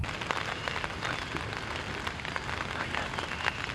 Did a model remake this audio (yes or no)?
no